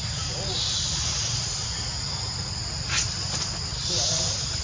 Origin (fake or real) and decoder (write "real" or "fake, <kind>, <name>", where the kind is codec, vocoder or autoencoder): real